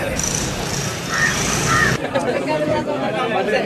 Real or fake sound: fake